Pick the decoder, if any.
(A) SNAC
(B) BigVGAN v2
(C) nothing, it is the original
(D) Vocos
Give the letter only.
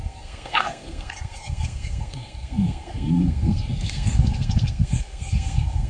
A